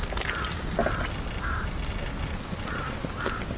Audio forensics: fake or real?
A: real